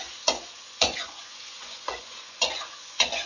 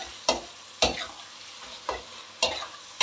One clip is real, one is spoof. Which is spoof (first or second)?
first